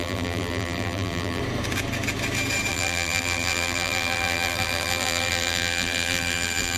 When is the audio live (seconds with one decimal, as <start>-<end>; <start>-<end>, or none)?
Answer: 1.4-2.7